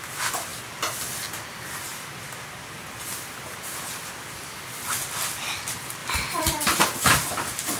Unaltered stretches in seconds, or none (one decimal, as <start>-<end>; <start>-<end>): 0.0-0.5; 1.0-6.0; 6.8-7.8